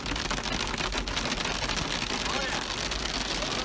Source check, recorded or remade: recorded